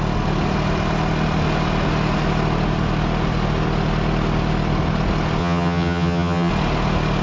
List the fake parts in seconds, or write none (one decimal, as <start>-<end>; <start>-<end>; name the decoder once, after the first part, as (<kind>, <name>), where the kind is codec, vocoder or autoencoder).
5.4-6.5 (vocoder, HiFi-GAN)